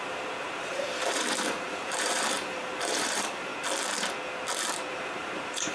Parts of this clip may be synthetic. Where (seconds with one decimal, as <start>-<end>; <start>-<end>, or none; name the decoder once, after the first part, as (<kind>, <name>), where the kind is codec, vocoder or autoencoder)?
0.0-3.5 (vocoder, BigVGAN v2); 4.9-5.7